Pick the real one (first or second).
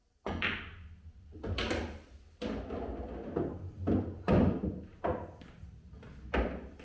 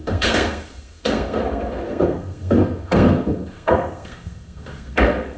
first